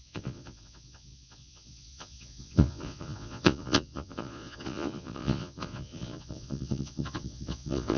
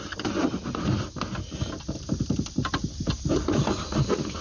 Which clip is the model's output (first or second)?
first